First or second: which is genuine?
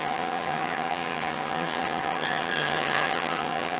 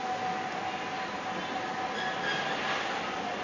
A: second